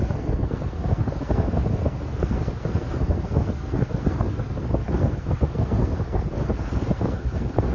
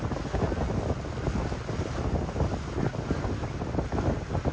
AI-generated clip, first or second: first